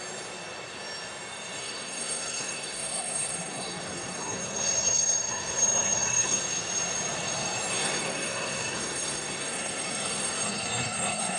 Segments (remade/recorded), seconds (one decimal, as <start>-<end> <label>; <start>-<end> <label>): 0.0-1.6 recorded; 1.6-6.4 remade; 6.4-7.7 recorded; 7.7-11.4 remade